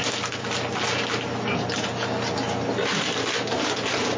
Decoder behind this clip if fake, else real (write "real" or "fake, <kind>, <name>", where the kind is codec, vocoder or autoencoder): real